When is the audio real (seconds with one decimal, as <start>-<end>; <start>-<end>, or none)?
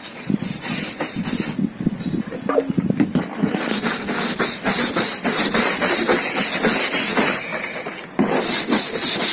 0.0-3.1; 3.6-9.3